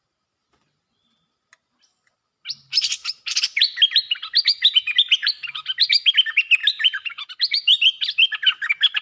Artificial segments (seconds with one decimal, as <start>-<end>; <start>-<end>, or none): 6.6-7.3